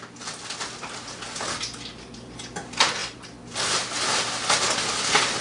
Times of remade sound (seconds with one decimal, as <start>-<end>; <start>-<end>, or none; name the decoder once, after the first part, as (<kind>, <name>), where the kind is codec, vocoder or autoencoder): none